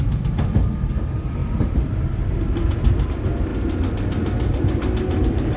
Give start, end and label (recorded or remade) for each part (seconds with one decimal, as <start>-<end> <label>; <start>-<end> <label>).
0.0-1.4 recorded; 1.4-2.3 remade; 2.3-5.6 recorded